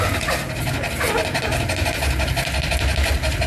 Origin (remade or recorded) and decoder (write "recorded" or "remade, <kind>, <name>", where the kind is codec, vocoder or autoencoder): recorded